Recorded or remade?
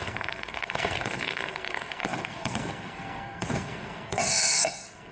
remade